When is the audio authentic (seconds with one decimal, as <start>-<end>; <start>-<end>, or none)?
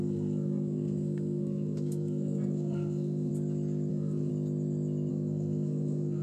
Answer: 3.3-3.9; 4.3-5.1